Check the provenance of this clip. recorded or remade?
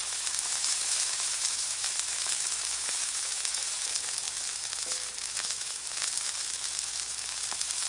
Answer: remade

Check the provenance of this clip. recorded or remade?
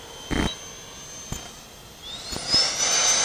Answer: recorded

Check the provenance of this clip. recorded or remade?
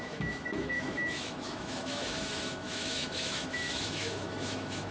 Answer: remade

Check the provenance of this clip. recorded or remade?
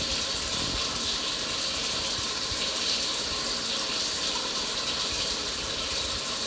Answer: recorded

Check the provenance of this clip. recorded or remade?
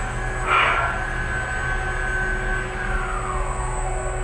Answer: recorded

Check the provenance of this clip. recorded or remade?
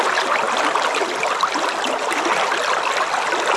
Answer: recorded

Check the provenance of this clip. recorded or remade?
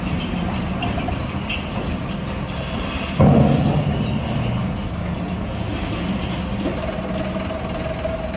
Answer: recorded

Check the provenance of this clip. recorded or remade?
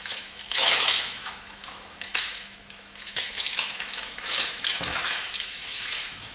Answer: remade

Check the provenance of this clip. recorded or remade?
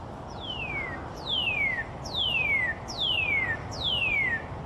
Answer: recorded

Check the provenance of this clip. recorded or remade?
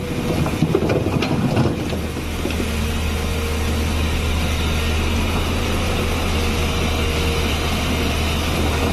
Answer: recorded